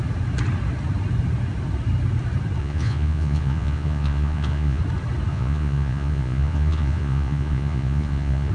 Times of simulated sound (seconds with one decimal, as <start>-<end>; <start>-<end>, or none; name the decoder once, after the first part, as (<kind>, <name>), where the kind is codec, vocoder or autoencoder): 2.6-4.8 (vocoder, Vocos); 5.3-8.5